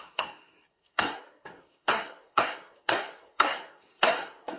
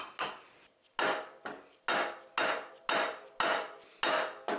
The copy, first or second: first